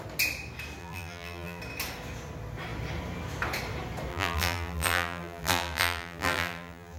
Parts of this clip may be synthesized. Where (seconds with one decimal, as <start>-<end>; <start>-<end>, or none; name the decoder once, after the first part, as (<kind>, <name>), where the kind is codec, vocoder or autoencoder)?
0.8-1.6 (vocoder, BigVGAN v2); 4.1-7.0